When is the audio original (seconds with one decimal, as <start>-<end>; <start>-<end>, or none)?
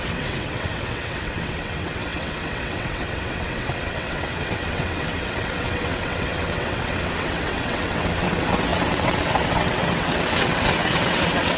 none